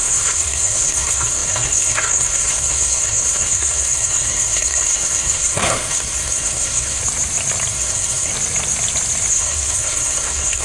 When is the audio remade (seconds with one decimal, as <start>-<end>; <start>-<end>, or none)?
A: 0.0-7.0; 7.7-8.3; 9.3-10.6